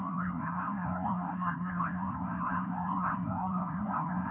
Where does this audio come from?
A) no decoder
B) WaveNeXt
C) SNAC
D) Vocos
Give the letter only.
C